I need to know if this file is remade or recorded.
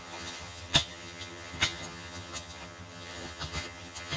remade